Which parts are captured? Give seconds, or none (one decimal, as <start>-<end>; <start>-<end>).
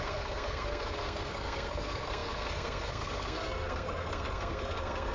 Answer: none